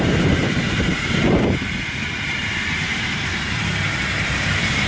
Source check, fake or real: fake